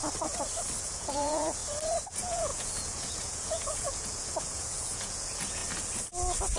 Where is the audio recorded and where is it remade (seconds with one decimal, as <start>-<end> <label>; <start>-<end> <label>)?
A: 0.0-0.8 recorded; 0.8-1.6 remade; 1.6-2.1 recorded; 2.1-5.6 remade; 5.6-6.6 recorded

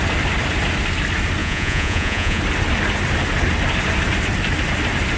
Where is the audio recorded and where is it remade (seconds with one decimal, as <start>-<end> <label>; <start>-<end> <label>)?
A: 0.0-1.4 recorded; 1.4-2.4 remade; 2.4-5.2 recorded

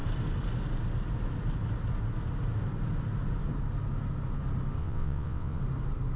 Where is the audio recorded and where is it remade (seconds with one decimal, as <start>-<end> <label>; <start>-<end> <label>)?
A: 0.0-4.8 recorded; 4.8-5.6 remade; 5.6-6.2 recorded

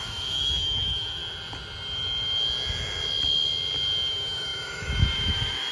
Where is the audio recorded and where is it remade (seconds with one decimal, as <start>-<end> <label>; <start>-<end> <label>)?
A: 0.0-1.2 remade; 1.2-4.1 recorded; 4.1-5.7 remade

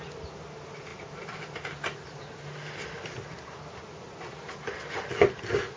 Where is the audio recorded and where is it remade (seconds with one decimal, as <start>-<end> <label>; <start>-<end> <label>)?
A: 0.0-5.8 recorded

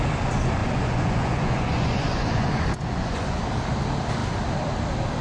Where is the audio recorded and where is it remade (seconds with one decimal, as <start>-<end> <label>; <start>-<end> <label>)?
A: 0.0-0.6 recorded; 0.6-3.4 remade; 3.4-5.2 recorded

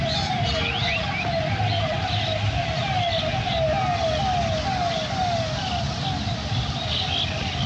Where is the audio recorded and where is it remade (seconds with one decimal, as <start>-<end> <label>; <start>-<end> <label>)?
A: 0.0-7.7 recorded

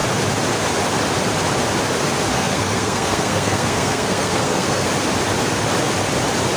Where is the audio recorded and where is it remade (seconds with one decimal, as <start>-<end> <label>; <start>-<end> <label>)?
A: 0.0-2.3 recorded; 2.3-4.9 remade; 4.9-6.6 recorded